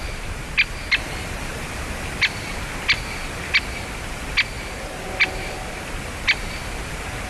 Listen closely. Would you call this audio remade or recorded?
recorded